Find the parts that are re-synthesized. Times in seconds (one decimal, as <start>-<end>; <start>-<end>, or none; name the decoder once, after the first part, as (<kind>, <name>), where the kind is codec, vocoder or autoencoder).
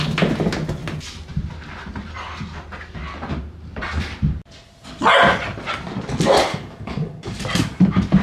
6.5-7.4 (codec, DAC)